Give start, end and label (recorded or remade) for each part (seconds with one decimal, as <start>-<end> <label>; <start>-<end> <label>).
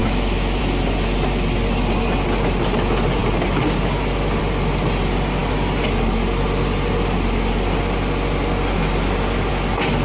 0.0-0.6 remade; 0.6-10.0 recorded